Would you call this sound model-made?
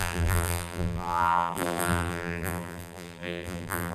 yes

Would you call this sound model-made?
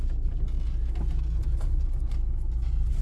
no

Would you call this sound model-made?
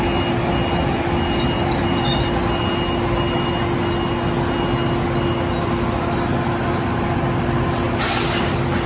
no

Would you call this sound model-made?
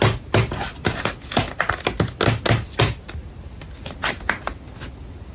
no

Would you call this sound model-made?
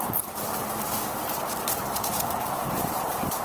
yes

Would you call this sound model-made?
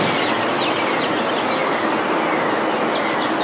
no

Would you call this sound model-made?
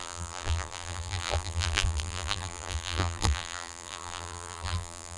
yes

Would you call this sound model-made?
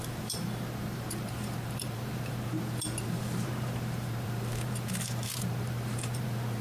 yes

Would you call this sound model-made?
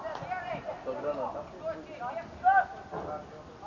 no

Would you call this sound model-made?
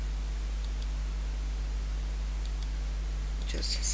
no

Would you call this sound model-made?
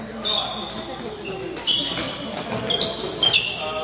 no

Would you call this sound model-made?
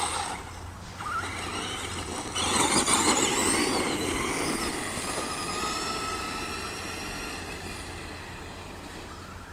no